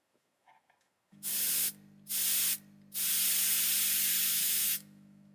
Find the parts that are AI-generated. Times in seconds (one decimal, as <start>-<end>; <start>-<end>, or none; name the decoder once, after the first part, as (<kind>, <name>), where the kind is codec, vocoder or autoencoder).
0.0-1.3 (autoencoder, DAC-VAE); 4.4-5.3